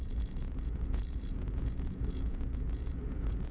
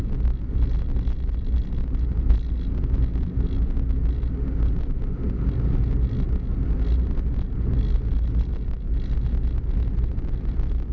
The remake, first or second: first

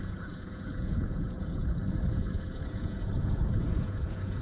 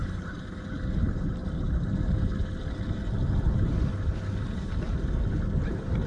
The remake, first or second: first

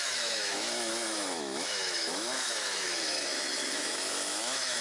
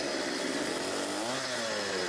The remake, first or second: first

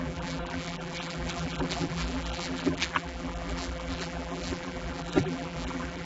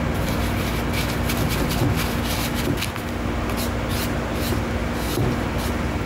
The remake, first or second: first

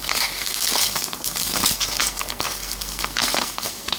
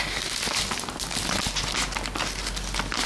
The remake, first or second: first